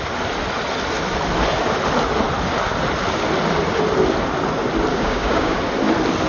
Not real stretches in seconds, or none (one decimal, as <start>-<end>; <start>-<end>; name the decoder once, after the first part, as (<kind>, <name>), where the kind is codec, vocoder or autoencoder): 4.9-5.6 (codec, DAC)